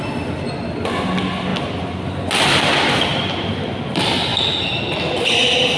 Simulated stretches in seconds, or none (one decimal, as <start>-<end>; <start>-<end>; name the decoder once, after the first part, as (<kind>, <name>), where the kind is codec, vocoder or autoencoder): none